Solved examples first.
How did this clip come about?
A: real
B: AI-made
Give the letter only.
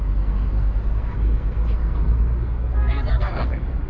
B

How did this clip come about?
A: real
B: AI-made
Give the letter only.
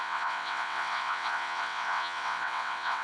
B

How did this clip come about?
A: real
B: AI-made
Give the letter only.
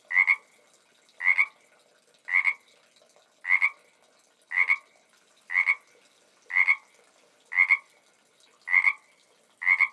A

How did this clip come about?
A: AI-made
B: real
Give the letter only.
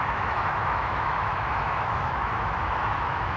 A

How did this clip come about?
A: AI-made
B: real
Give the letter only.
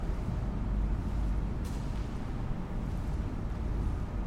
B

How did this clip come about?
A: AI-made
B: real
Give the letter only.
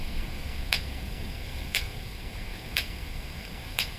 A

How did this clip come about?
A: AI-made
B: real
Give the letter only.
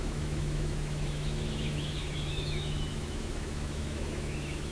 A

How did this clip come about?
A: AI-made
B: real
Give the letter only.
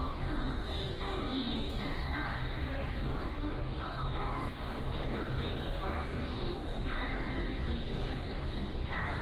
A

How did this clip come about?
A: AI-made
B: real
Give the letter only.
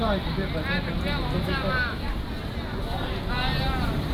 B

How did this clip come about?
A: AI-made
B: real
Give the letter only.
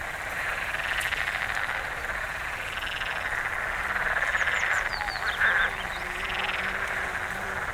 B